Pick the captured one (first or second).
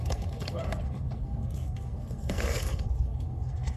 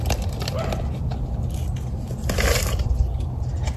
second